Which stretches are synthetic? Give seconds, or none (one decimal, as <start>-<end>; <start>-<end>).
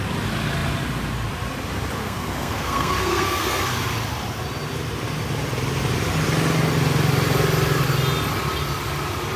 2.0-3.6